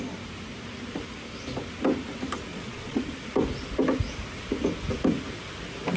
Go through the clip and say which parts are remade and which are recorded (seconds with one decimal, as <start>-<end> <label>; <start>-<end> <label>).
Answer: 0.0-2.5 recorded; 2.5-3.0 remade; 3.0-6.0 recorded